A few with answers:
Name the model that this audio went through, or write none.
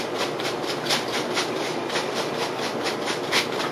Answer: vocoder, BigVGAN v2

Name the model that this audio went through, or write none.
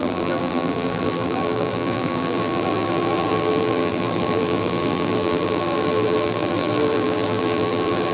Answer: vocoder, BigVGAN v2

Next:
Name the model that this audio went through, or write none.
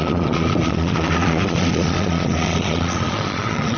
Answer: vocoder, Vocos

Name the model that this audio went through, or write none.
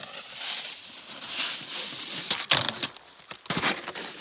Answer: none